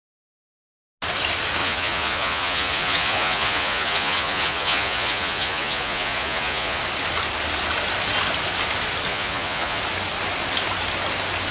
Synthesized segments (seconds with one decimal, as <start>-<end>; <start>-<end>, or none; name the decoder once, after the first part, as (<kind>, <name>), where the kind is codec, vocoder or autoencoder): 1.6-6.8 (vocoder, Vocos); 9.1-9.8